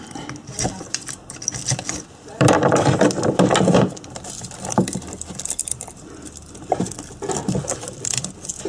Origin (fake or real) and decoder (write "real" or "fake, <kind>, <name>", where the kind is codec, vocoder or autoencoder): real